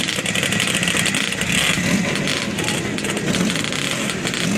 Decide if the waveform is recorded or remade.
recorded